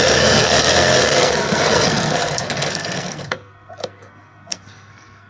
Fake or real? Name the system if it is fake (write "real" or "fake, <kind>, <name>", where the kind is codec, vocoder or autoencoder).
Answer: fake, codec, SNAC